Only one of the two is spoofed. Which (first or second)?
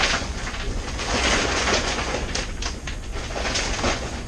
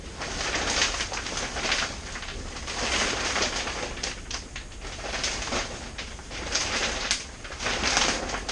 first